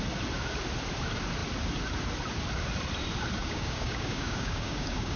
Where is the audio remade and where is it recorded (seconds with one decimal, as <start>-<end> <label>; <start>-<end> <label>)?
0.0-3.4 recorded; 3.4-5.2 remade